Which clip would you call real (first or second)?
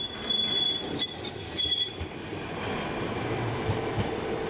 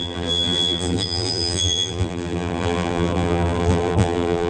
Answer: first